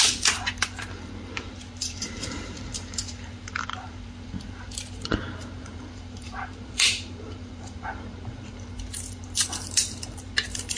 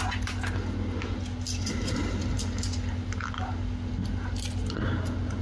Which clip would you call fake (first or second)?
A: first